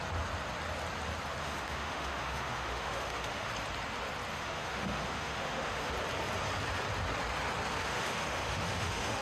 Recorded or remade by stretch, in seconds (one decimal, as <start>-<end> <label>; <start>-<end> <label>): 0.0-1.4 recorded; 1.4-3.5 remade; 3.5-4.3 recorded; 4.3-5.9 remade; 5.9-7.7 recorded; 7.7-9.2 remade